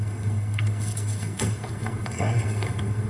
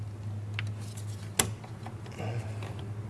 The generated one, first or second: first